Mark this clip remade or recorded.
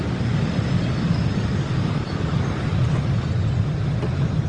recorded